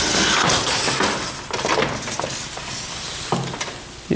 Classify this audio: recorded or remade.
recorded